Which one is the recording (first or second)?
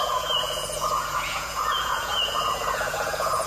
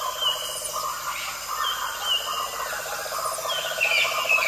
second